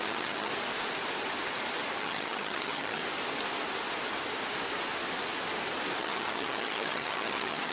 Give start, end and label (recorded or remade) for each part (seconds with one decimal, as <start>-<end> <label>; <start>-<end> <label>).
0.0-0.5 remade; 0.5-2.0 recorded; 2.0-3.0 remade; 3.0-6.0 recorded; 6.0-7.7 remade